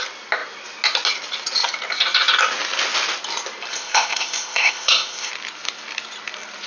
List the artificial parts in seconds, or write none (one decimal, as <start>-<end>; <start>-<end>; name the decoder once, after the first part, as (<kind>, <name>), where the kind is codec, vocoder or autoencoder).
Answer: 3.7-5.3 (codec, ZipCodec)